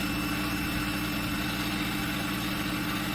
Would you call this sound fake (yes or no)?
no